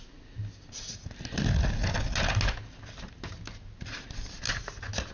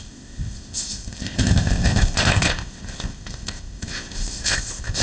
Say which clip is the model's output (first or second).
second